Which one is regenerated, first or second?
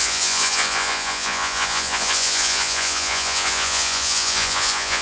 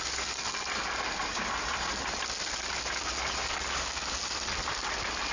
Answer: first